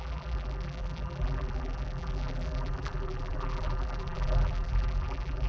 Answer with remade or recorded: remade